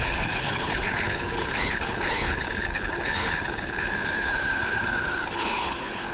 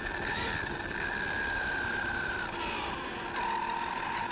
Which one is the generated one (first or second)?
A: first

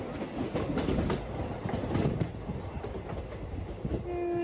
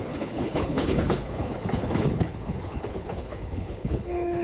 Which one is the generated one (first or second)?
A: second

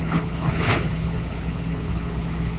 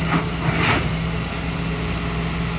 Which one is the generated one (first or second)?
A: first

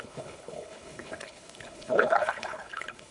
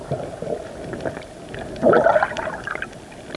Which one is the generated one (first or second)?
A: first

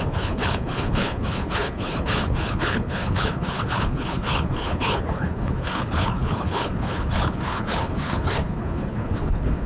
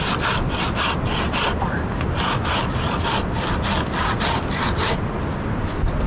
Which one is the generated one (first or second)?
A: first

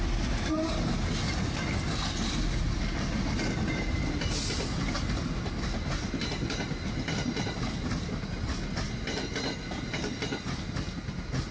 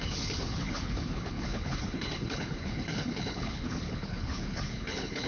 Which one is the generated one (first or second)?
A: second